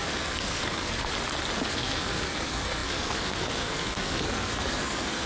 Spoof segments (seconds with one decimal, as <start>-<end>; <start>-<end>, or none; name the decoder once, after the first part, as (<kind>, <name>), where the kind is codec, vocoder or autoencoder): 0.0-1.1 (codec, SNAC); 1.7-5.3